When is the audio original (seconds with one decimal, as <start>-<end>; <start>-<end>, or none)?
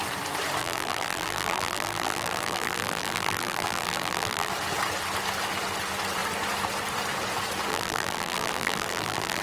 0.0-0.6; 4.5-7.7